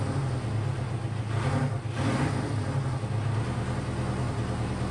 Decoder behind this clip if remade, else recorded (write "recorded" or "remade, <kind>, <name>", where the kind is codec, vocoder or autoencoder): recorded